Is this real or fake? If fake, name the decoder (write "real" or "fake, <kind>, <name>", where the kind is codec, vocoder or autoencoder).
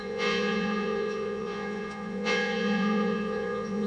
fake, vocoder, Vocos